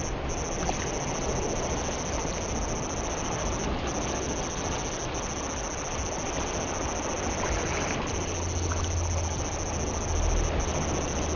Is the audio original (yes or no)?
yes